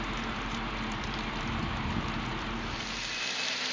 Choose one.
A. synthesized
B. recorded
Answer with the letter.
A